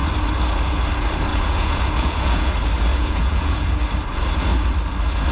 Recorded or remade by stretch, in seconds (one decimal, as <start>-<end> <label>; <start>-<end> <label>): 0.0-1.3 recorded; 1.3-2.5 remade; 2.5-2.9 recorded; 2.9-3.7 remade; 3.7-5.3 recorded